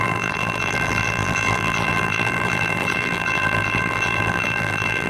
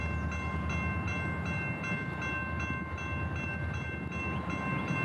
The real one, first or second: second